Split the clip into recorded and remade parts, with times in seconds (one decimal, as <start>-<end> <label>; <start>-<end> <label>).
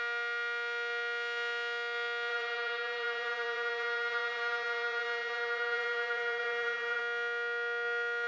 0.0-2.3 recorded; 2.3-7.0 remade; 7.0-8.3 recorded